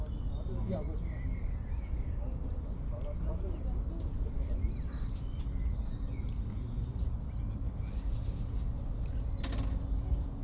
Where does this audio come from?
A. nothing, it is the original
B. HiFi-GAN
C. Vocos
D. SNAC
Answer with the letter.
A